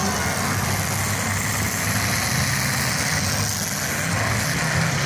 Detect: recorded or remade recorded